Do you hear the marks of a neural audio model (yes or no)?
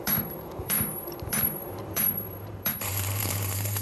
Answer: yes